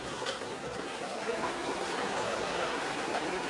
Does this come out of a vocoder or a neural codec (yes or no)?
yes